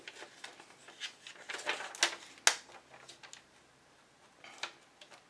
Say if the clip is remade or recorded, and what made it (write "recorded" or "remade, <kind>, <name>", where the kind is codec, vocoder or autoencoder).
recorded